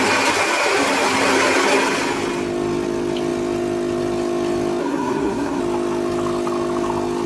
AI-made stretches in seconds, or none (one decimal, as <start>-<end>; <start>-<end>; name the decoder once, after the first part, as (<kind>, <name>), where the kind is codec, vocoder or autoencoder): 4.8-5.6 (codec, SNAC)